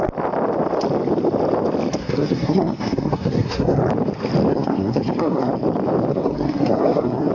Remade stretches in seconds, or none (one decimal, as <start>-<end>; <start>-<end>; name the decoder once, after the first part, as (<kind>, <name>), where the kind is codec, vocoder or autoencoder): 2.0-3.8 (codec, SNAC); 4.5-5.5; 6.1-7.3